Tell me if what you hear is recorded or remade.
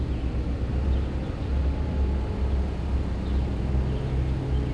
recorded